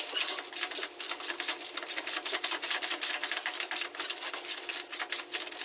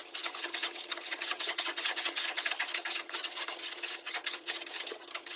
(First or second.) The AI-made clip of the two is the second